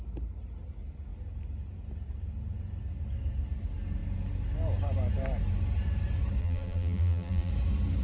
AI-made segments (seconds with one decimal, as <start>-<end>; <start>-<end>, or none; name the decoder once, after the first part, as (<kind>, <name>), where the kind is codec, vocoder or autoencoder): 6.4-7.5 (vocoder, BigVGAN v2)